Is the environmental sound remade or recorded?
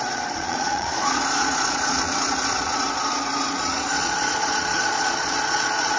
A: remade